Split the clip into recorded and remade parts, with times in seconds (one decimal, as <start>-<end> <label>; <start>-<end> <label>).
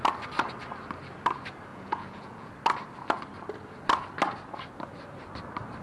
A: 0.0-1.7 recorded; 1.7-2.5 remade; 2.5-5.8 recorded